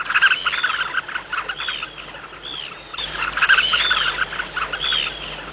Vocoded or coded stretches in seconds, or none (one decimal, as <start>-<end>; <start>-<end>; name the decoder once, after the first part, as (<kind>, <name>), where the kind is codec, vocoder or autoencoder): 2.9-4.1 (vocoder, BigVGAN v2)